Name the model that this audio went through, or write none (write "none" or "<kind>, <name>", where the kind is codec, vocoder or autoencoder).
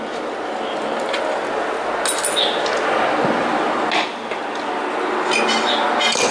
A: none